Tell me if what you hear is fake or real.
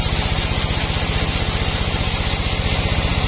real